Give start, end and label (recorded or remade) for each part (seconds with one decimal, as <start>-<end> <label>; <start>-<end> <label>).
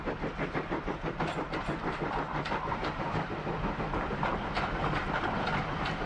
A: 0.0-6.1 recorded